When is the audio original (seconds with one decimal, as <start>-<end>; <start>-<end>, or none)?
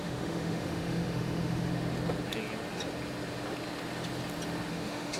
1.7-4.7